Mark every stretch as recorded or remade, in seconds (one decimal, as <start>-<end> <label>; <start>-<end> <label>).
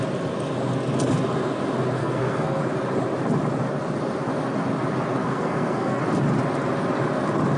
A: 0.0-2.0 recorded; 2.0-2.6 remade; 2.6-5.2 recorded; 5.2-6.0 remade; 6.0-7.6 recorded